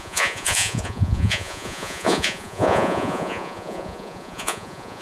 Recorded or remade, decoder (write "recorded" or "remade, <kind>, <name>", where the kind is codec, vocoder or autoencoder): remade, vocoder, Vocos